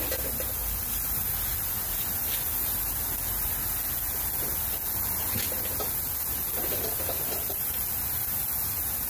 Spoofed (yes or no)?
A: no